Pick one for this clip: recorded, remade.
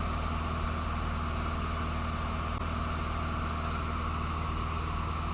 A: recorded